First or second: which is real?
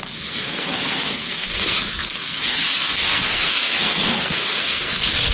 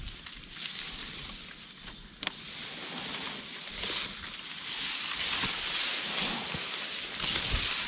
second